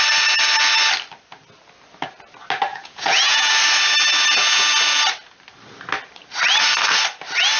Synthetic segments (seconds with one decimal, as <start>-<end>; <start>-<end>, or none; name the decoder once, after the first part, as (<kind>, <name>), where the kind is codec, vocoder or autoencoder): 2.7-3.5 (vocoder, Vocos)